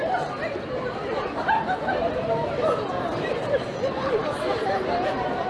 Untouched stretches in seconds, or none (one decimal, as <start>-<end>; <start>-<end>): 1.1-2.0